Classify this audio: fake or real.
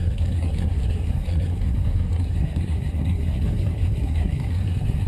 fake